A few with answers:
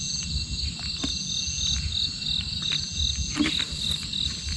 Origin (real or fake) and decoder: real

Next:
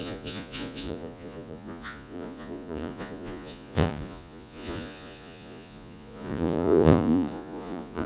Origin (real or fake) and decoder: fake, vocoder, Vocos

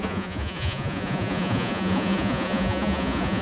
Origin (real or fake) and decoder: fake, vocoder, Vocos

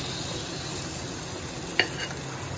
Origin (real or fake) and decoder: real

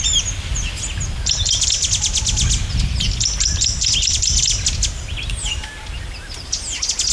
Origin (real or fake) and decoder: real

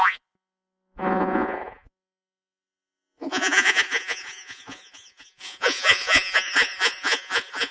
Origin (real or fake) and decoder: fake, vocoder, Vocos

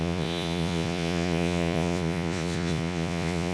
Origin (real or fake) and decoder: fake, vocoder, Vocos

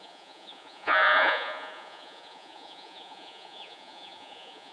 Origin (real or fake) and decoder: fake, vocoder, Vocos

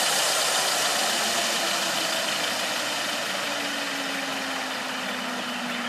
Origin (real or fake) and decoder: real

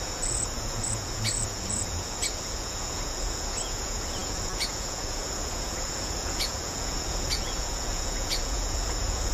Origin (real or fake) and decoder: fake, vocoder, Vocos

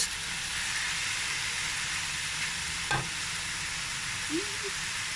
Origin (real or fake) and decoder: real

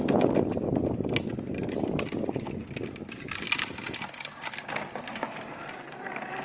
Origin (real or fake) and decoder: real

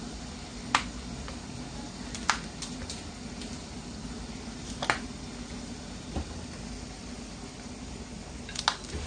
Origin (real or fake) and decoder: real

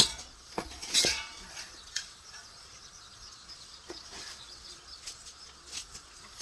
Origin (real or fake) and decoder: fake, vocoder, Vocos